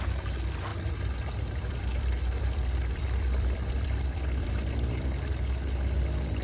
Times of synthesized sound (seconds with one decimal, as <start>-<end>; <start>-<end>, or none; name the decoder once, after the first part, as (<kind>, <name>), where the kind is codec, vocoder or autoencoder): 0.7-4.5 (vocoder, BigVGAN v2)